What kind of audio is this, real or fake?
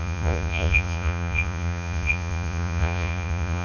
fake